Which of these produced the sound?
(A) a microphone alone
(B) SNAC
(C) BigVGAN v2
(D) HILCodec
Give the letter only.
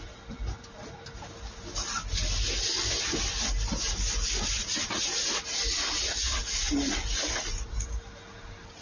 A